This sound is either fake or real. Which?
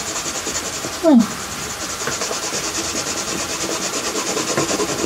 fake